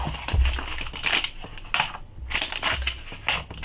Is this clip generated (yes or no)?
no